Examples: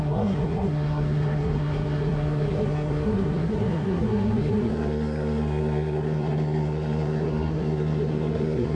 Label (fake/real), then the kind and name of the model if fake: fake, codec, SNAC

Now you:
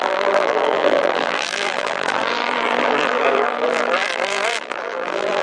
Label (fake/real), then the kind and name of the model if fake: fake, vocoder, BigVGAN v2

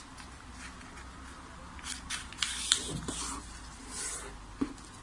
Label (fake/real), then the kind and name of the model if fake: real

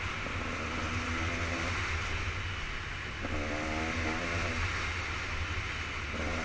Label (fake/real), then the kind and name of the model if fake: real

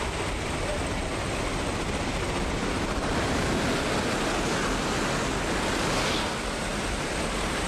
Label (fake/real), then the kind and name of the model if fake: real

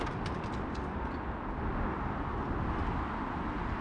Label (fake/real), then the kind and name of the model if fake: real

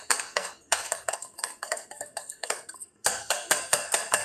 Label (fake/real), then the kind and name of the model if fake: fake, codec, SNAC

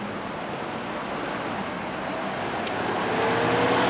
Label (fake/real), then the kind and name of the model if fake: real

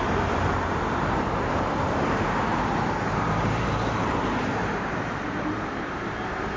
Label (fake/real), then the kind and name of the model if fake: fake, vocoder, BigVGAN v2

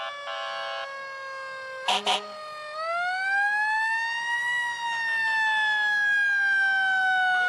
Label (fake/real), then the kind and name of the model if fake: real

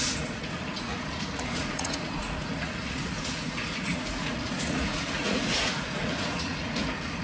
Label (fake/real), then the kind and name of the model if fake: fake, vocoder, Vocos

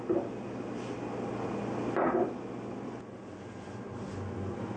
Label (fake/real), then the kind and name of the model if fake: real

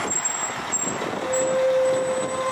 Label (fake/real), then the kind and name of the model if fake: real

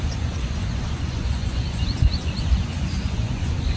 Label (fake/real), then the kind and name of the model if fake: fake, vocoder, Vocos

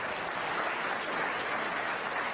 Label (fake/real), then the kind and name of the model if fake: real